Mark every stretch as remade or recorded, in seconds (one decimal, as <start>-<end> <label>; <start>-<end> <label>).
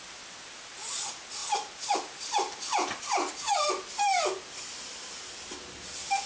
0.0-6.3 recorded